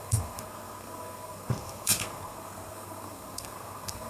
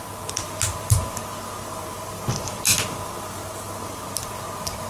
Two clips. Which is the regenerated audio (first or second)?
first